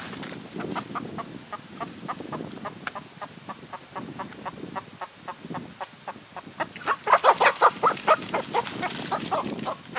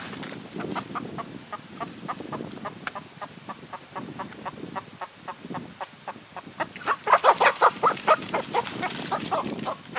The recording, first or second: first